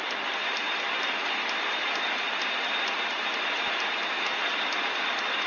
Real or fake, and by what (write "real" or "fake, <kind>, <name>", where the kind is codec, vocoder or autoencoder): real